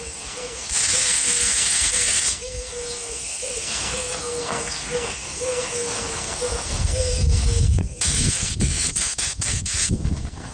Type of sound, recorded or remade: remade